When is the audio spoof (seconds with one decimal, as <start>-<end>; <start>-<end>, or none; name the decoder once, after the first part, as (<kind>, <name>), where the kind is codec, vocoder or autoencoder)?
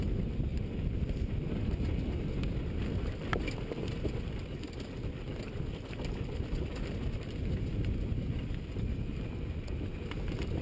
none